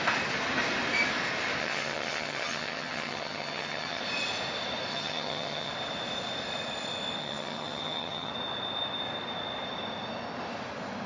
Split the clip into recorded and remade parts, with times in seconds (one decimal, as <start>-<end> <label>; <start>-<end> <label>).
0.0-1.6 recorded; 1.6-4.0 remade; 4.0-4.9 recorded; 4.9-5.7 remade; 5.7-7.2 recorded; 7.2-8.3 remade; 8.3-11.1 recorded